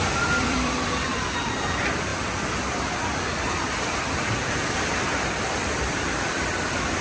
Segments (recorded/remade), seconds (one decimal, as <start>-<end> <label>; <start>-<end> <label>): 0.0-7.0 remade

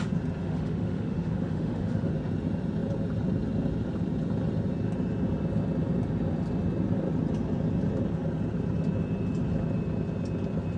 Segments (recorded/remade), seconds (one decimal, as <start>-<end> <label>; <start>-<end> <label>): 0.0-0.4 recorded; 0.4-2.1 remade; 2.1-10.8 recorded

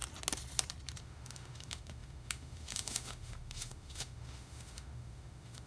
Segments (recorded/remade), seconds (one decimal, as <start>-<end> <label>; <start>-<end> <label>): 0.0-1.0 recorded; 1.0-5.7 remade

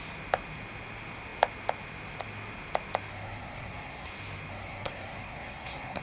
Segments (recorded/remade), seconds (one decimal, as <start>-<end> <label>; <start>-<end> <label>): 0.0-3.1 recorded; 3.1-4.1 remade; 4.1-4.5 recorded; 4.5-6.0 remade